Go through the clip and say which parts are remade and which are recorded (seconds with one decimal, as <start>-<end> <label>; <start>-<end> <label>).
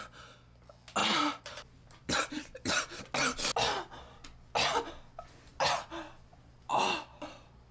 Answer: 0.0-1.0 recorded; 1.0-3.0 remade; 3.0-7.7 recorded